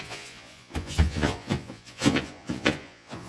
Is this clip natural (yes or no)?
no